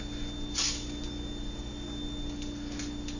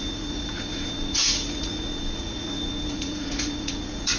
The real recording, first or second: first